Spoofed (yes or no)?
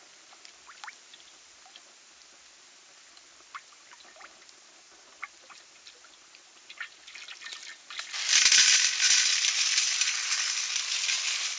no